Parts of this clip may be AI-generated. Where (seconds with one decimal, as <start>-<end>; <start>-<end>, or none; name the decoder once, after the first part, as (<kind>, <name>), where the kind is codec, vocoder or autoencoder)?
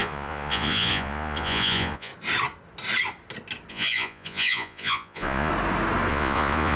0.0-2.1 (vocoder, Vocos); 3.7-5.5; 6.1-6.8